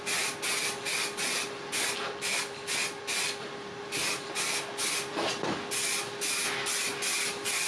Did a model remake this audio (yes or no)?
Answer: no